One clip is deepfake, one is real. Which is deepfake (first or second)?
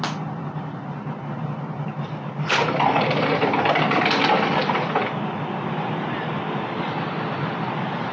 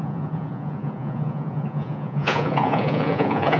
second